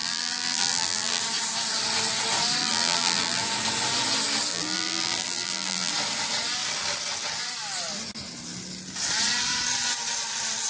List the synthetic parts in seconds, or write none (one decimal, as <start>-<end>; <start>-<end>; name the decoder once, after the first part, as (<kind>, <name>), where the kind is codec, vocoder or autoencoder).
0.0-1.2 (vocoder, BigVGAN v2); 2.6-3.4; 4.5-5.9